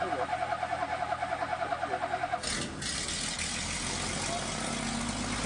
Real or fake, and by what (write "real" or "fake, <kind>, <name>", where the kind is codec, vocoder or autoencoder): real